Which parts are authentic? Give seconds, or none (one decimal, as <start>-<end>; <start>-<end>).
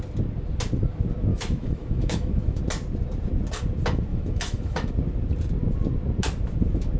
0.0-1.3; 2.6-4.1; 4.9-7.0